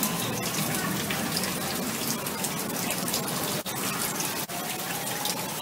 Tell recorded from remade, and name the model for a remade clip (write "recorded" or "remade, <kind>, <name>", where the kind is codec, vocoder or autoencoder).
recorded